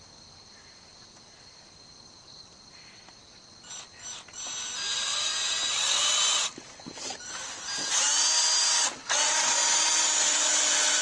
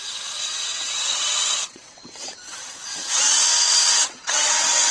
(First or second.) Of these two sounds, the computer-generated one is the second